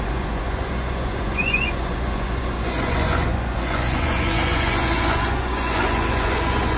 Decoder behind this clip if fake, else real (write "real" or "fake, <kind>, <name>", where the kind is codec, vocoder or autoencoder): fake, vocoder, Vocos